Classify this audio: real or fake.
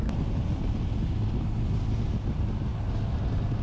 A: real